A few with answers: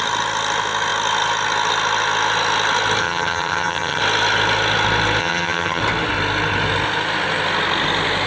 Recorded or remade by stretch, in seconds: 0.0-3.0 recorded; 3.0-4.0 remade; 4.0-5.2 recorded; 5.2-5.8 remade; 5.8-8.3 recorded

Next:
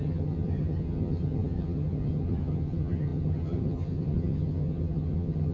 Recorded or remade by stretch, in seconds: 0.0-5.5 remade

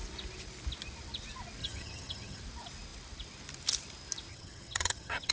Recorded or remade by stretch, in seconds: 0.0-1.6 recorded; 1.6-2.4 remade; 2.4-4.3 recorded; 4.3-5.3 remade

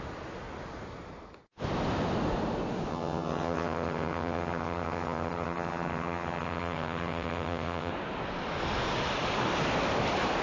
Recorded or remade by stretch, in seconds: 0.0-2.9 recorded; 2.9-7.9 remade; 7.9-10.4 recorded

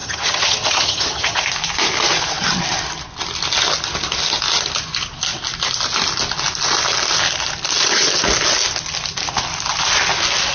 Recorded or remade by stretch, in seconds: 0.0-1.4 remade; 1.4-10.5 recorded